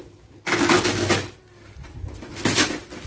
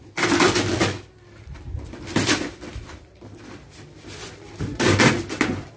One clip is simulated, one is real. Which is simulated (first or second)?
second